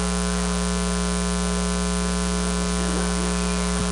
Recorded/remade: recorded